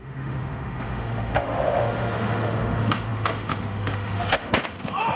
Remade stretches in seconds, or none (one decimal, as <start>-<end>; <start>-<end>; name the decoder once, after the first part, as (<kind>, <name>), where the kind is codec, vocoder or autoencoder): 0.0-5.2 (autoencoder, DAC-VAE)